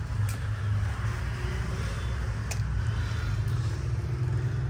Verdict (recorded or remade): recorded